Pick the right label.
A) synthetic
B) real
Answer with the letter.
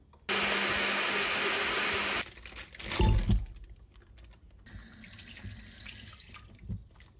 B